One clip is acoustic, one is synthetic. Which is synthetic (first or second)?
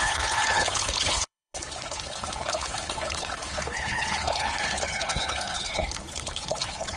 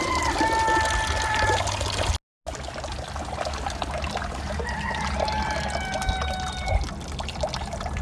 first